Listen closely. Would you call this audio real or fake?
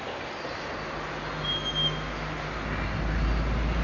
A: real